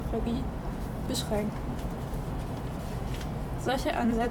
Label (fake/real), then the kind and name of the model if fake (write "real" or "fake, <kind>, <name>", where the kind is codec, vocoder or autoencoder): fake, vocoder, BigVGAN v2